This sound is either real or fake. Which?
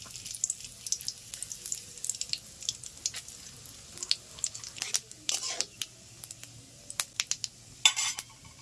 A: real